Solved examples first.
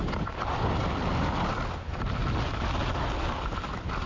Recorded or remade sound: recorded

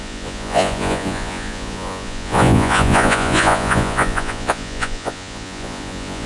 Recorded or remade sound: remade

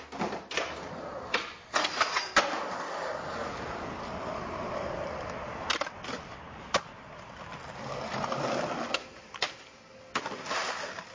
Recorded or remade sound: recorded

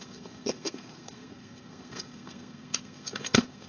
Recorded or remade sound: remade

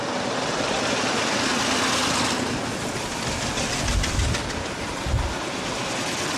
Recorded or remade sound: recorded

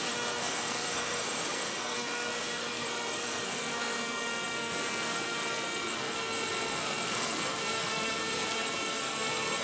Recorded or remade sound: remade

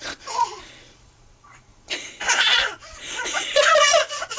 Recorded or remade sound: remade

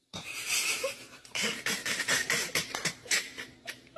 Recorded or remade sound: remade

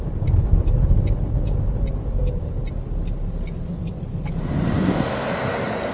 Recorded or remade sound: recorded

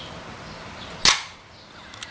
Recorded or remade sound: recorded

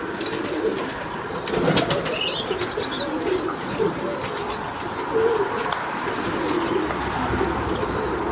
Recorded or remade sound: recorded